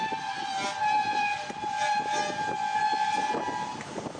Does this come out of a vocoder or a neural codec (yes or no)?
no